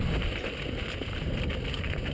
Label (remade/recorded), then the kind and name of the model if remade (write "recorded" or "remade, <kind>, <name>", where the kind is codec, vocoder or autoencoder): recorded